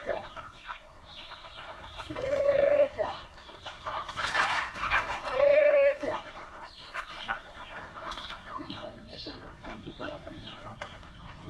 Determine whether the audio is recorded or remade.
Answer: remade